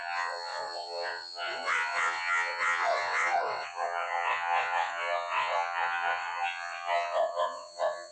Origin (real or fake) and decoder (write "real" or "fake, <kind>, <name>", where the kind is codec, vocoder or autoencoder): fake, vocoder, WaveNeXt